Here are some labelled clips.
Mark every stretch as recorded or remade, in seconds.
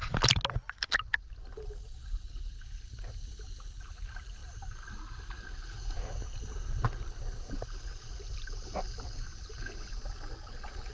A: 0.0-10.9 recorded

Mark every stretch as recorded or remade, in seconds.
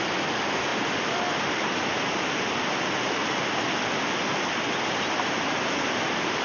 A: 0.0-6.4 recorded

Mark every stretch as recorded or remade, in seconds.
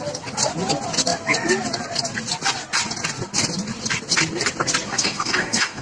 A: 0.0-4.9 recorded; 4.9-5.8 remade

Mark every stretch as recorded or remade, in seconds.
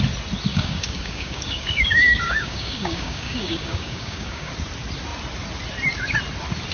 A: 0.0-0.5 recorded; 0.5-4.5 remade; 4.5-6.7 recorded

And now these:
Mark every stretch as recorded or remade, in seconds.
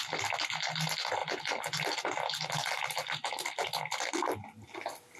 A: 0.0-5.2 recorded